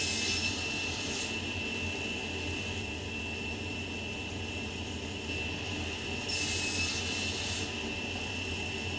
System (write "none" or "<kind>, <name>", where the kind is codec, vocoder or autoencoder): none